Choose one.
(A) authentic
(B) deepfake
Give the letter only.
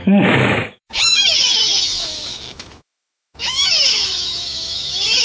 B